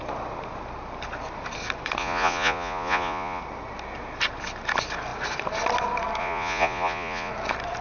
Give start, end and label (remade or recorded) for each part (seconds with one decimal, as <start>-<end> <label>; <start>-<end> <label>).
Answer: 0.0-2.0 recorded; 2.0-3.4 remade; 3.4-6.2 recorded; 6.2-7.3 remade; 7.3-7.8 recorded

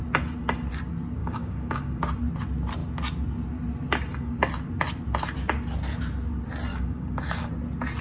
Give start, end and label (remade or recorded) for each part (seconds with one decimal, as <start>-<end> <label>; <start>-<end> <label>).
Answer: 0.0-1.2 recorded; 1.2-2.0 remade; 2.0-6.7 recorded; 6.7-7.5 remade; 7.5-8.0 recorded

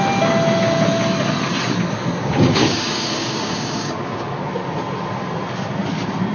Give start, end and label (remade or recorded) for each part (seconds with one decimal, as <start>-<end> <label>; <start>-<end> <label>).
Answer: 0.0-2.2 recorded; 2.2-4.5 remade; 4.5-6.3 recorded